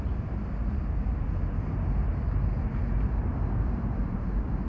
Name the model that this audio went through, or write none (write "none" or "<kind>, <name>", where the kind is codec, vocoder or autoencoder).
none